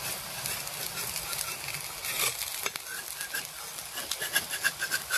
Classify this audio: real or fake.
real